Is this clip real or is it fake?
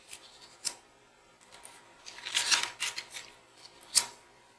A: fake